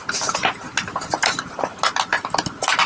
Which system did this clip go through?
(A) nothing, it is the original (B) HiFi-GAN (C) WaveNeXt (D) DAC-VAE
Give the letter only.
A